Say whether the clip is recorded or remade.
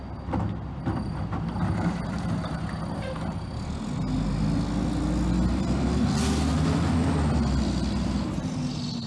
recorded